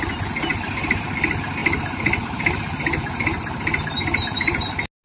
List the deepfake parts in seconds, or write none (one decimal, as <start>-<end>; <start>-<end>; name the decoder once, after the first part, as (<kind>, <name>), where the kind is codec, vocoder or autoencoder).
0.5-1.1 (vocoder, BigVGAN v2); 1.6-4.6

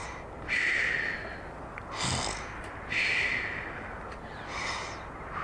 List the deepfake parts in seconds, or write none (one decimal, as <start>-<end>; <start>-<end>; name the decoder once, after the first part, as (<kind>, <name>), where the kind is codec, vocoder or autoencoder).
none

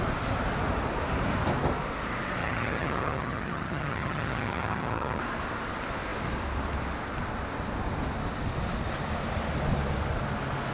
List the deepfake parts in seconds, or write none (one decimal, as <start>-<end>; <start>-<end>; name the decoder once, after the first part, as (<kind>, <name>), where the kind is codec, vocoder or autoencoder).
2.4-5.2 (vocoder, HiFi-GAN)